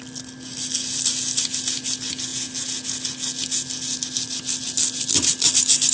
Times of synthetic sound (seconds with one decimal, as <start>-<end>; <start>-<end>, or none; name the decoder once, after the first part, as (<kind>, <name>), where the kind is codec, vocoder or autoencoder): none